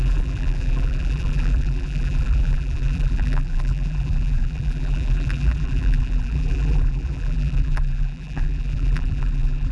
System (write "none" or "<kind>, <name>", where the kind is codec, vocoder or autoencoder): vocoder, BigVGAN v2